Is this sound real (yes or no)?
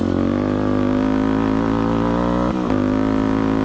yes